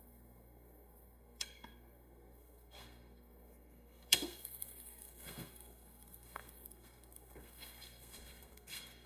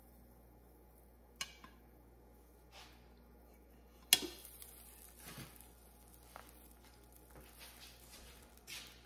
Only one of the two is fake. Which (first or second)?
first